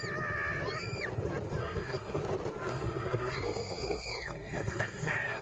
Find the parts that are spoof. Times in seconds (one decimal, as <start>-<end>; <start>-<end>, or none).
1.6-2.2; 2.7-5.4